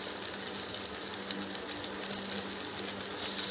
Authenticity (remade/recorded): recorded